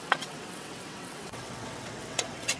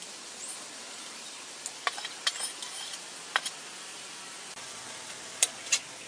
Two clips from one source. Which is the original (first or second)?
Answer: second